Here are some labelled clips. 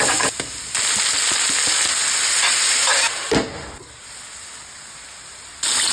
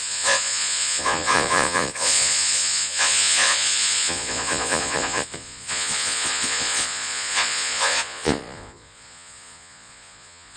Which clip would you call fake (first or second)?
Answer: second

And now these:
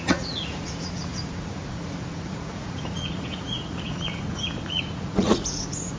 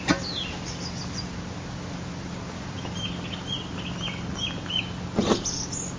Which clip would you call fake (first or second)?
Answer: first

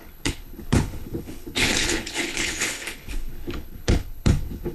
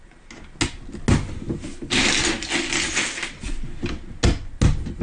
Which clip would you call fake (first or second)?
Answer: first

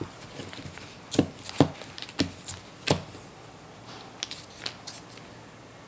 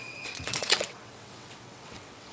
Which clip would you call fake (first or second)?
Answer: second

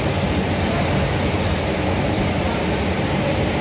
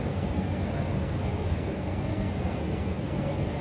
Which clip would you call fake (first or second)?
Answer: second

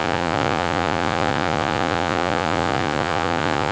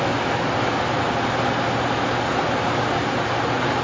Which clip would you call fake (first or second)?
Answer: first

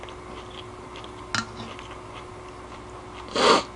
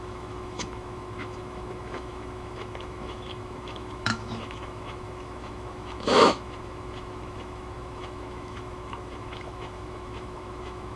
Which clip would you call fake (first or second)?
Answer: second